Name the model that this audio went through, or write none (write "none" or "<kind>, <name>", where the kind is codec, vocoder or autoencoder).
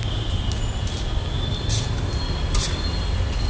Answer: none